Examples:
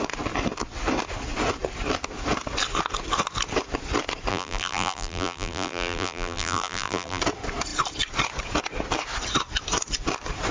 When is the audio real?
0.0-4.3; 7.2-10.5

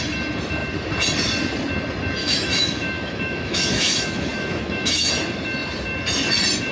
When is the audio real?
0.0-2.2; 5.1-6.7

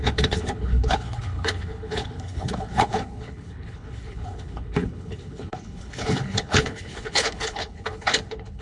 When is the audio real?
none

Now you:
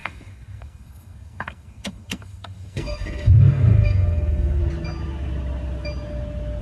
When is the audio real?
4.6-6.6

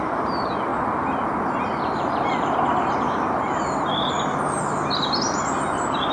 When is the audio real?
0.0-6.1